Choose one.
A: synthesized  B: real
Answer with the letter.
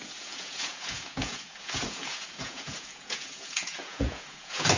A